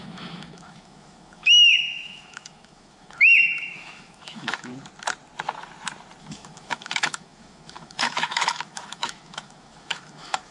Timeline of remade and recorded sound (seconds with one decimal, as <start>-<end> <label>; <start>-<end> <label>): 0.0-4.7 remade; 4.7-6.2 recorded; 6.2-10.5 remade